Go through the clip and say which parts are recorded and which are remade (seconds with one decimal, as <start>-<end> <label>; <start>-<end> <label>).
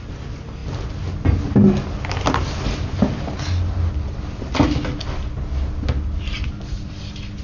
0.0-7.4 recorded